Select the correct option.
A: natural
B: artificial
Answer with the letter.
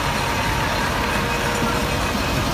A